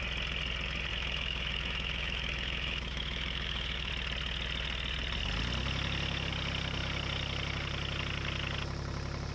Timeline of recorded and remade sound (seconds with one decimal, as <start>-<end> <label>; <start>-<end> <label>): 0.0-0.9 recorded; 0.9-3.9 remade; 3.9-9.3 recorded